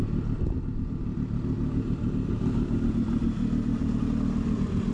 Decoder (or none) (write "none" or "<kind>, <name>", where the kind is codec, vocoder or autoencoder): none